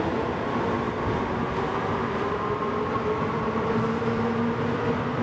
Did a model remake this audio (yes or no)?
no